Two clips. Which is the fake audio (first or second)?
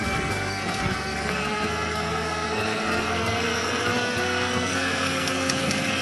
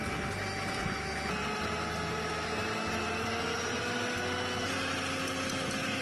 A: first